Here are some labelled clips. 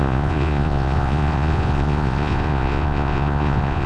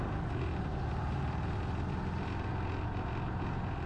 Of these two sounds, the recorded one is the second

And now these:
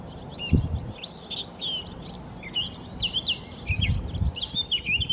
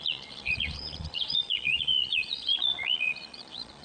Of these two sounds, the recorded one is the first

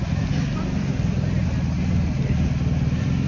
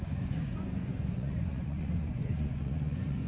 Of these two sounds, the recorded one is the first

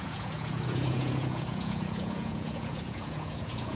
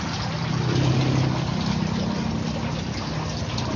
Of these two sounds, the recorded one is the second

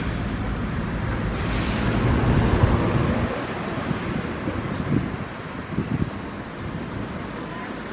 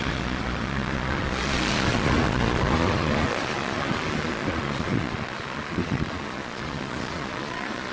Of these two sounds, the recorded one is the first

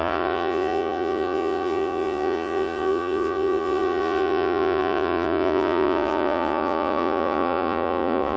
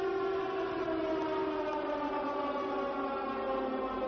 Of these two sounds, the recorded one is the second